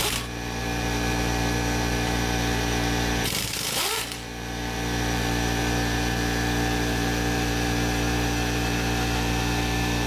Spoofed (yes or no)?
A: yes